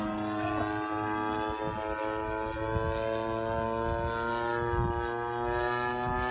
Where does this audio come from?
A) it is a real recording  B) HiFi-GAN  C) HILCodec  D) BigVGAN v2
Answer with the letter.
A